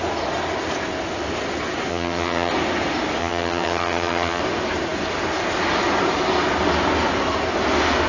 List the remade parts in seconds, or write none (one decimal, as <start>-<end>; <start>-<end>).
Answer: 1.9-2.5; 3.2-4.4